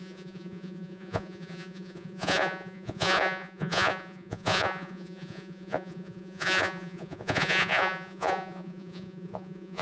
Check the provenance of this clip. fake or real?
fake